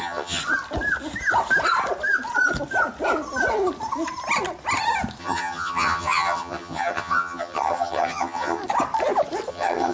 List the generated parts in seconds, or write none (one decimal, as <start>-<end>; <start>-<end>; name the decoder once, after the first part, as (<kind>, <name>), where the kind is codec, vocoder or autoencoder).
0.0-0.4 (vocoder, HiFi-GAN); 5.2-8.6; 9.5-9.9